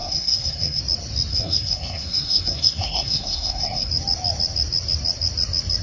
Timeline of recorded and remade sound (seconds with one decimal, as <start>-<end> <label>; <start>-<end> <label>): 0.0-0.8 remade; 0.8-1.3 recorded; 1.3-3.9 remade; 3.9-5.8 recorded